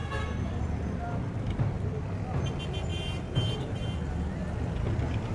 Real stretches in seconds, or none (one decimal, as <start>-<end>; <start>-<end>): 0.0-2.9; 3.8-5.3